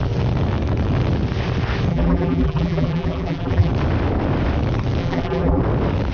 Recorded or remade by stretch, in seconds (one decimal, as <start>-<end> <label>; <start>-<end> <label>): 0.0-1.9 recorded; 1.9-3.7 remade; 3.7-5.0 recorded; 5.0-5.6 remade; 5.6-6.1 recorded